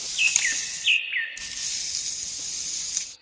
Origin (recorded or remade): recorded